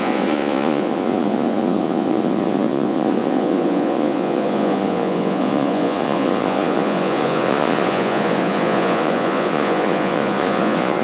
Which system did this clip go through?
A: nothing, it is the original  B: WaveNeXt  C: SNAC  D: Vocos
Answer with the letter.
D